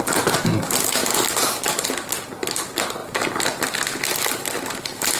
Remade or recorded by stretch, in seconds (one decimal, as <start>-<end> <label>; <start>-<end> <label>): 0.0-5.2 recorded